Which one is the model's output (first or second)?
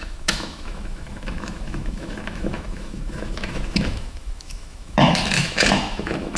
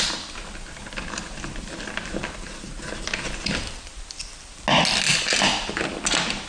first